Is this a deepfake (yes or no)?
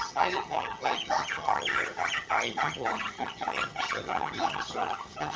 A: yes